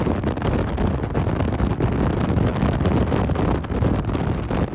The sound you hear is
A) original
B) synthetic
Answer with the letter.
A